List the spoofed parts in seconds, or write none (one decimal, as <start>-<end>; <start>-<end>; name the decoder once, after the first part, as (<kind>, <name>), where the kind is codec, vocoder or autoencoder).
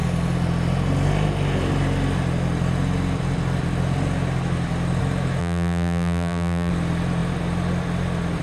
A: 5.4-6.7 (vocoder, BigVGAN v2)